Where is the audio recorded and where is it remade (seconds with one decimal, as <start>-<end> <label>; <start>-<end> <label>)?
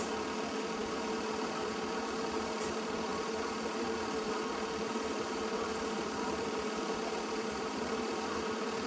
0.0-8.9 remade